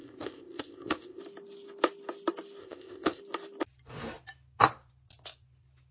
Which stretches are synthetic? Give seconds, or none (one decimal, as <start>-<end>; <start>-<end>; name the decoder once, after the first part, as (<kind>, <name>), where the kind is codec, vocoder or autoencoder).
0.0-1.2 (codec, ZipCodec); 2.6-3.2

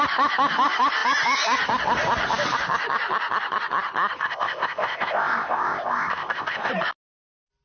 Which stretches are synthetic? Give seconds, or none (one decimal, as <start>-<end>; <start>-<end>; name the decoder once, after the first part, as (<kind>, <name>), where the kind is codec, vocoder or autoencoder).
4.2-6.7 (codec, ZipCodec)

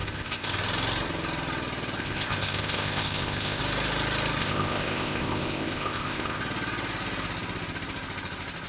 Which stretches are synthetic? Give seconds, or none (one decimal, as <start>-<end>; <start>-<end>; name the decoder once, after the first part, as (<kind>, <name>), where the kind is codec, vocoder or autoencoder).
0.0-0.5 (codec, ZipCodec); 2.0-3.6; 4.4-6.4